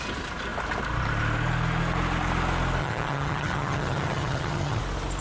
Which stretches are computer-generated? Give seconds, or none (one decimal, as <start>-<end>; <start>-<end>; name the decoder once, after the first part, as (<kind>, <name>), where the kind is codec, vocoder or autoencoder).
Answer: 2.8-4.8 (vocoder, HiFi-GAN)